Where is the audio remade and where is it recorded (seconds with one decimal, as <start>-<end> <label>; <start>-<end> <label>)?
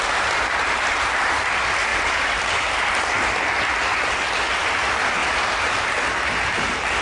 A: 0.0-7.0 recorded